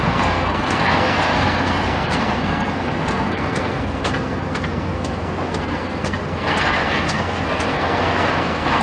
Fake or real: fake